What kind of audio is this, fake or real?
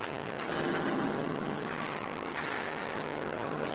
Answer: fake